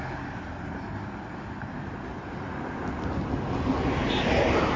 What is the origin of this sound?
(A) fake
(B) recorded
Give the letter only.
B